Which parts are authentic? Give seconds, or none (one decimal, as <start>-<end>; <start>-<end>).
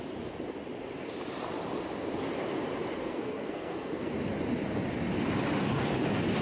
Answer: 0.0-3.0; 4.1-6.4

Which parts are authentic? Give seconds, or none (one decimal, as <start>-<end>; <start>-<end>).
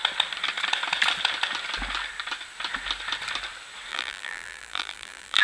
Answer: 0.0-3.9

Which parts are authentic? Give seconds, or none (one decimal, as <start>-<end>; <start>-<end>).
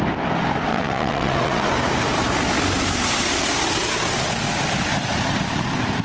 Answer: 0.0-0.7; 1.7-6.0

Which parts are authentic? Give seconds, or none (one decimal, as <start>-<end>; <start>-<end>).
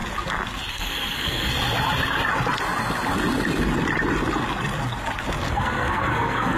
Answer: 0.0-0.7; 1.5-5.5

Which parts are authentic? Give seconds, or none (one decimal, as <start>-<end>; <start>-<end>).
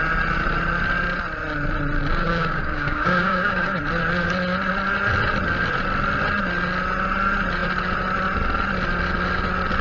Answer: 0.0-2.1; 3.8-9.8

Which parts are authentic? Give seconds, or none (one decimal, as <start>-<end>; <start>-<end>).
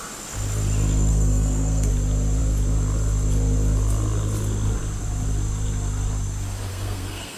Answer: 0.0-1.1; 1.9-6.7